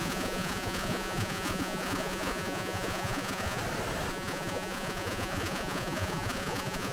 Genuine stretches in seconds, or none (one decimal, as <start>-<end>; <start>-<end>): 3.6-4.1